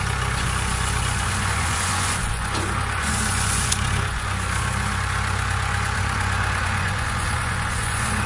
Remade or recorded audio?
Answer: remade